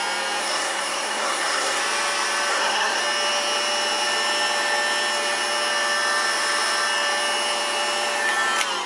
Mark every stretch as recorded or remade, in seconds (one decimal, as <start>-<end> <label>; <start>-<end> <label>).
0.0-0.4 recorded; 0.4-1.8 remade; 1.8-2.5 recorded; 2.5-3.0 remade; 3.0-8.9 recorded

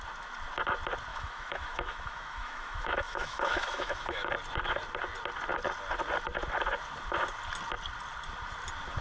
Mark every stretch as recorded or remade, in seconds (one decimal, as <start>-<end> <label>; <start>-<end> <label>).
0.0-1.1 recorded; 1.1-4.3 remade; 4.3-9.0 recorded

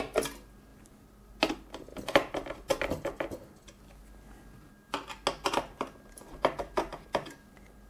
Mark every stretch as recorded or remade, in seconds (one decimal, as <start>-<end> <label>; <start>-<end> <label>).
0.0-7.9 recorded